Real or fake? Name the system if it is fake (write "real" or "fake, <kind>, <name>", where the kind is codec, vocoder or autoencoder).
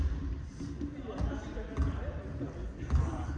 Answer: real